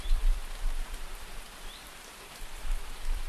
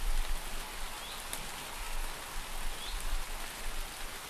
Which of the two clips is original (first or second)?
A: second